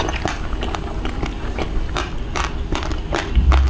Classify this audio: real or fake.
real